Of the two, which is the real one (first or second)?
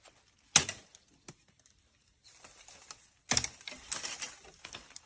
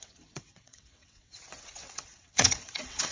first